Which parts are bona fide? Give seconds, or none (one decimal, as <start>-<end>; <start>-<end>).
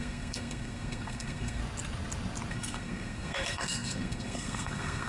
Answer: 1.6-2.5